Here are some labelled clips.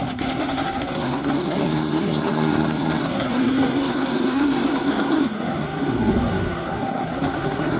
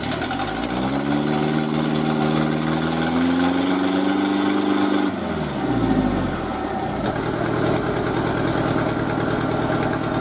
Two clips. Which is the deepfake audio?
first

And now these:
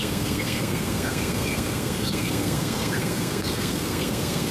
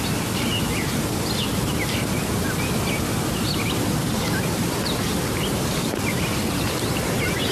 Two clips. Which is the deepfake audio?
first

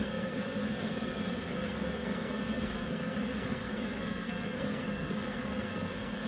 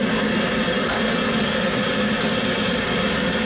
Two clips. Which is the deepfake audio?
first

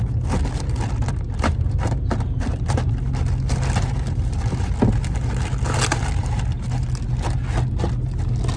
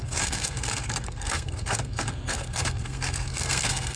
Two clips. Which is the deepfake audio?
second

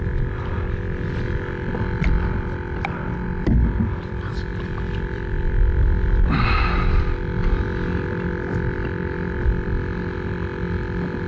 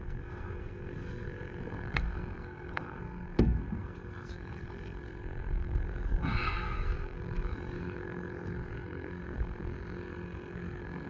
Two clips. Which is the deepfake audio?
second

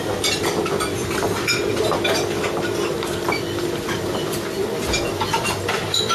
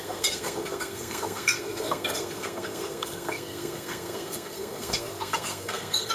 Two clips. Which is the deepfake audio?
second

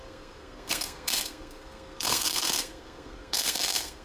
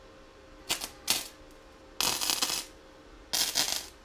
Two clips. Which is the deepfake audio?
first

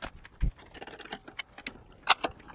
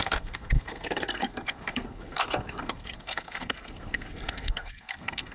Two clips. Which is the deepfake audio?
second